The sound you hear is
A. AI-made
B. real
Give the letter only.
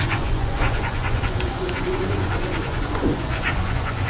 A